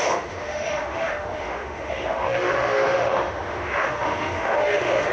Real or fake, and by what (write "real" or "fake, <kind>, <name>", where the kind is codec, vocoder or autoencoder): fake, autoencoder, DAC-VAE